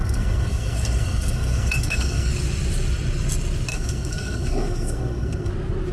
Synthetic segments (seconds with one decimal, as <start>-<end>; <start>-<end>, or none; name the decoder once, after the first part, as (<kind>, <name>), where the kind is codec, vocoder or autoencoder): 0.0-2.3 (codec, SNAC); 3.7-5.5